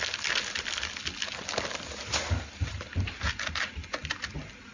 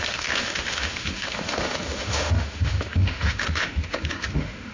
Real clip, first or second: first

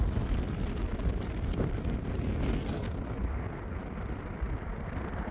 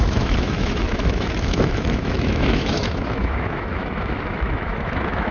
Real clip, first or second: first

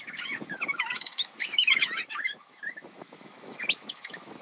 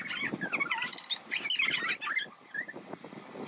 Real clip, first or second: second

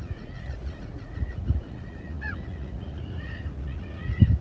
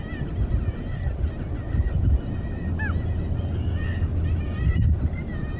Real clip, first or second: second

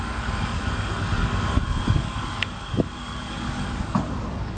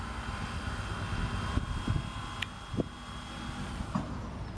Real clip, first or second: second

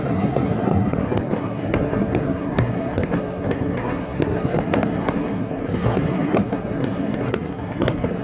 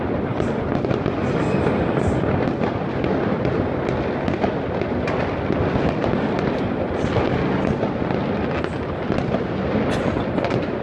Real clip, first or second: second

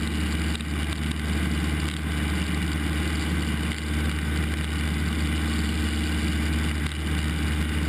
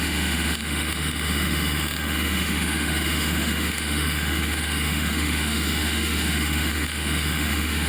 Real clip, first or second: first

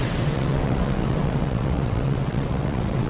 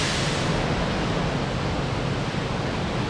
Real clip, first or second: second